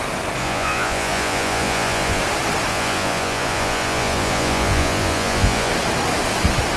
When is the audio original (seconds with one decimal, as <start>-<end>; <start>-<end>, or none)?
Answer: 0.0-0.4; 2.2-2.7; 5.7-6.8